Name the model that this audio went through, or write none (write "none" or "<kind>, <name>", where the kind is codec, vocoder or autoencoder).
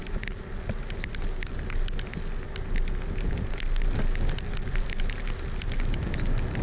none